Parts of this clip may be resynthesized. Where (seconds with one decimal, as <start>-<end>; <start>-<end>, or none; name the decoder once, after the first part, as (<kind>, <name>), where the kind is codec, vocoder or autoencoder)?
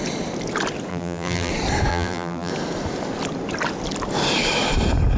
0.9-1.5 (vocoder, BigVGAN v2); 1.9-2.5